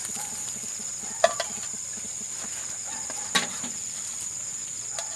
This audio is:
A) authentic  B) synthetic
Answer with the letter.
A